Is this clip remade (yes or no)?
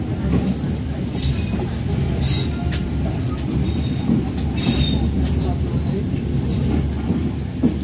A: no